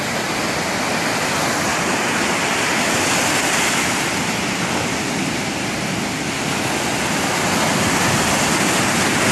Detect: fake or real real